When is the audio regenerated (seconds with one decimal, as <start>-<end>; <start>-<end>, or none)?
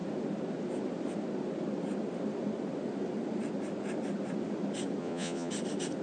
5.0-5.5